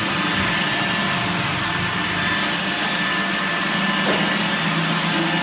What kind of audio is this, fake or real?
real